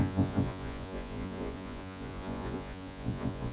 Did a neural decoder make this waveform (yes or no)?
yes